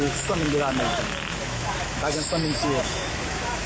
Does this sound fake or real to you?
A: fake